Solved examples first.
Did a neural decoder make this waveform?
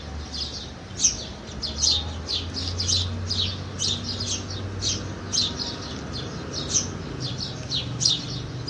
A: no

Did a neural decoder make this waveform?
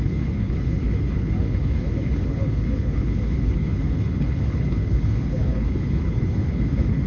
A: yes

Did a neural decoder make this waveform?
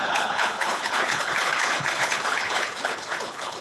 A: yes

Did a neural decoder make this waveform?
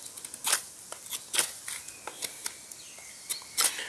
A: no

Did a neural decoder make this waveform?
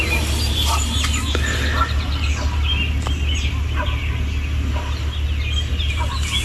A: no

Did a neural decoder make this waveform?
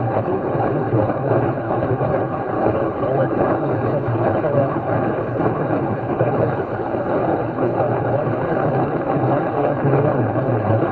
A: yes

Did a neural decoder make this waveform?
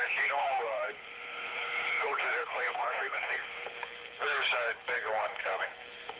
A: yes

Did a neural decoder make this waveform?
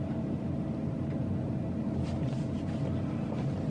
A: no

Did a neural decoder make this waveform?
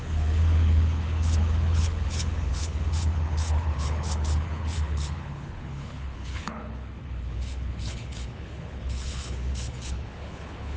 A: yes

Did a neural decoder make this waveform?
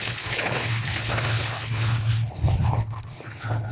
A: yes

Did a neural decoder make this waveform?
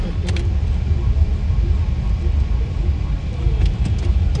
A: no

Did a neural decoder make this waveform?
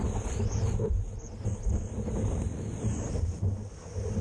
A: no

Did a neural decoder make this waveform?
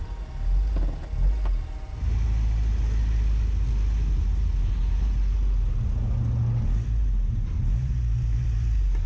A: no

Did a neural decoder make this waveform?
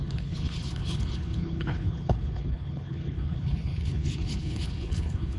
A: yes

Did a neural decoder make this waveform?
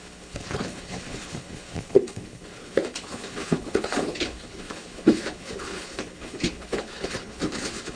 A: yes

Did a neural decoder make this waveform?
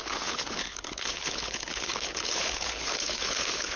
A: yes